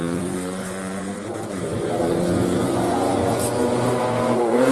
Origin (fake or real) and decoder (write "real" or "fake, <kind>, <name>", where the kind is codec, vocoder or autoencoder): fake, vocoder, Vocos